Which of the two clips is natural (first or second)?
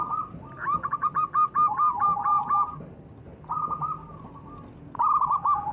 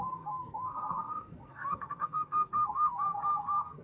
first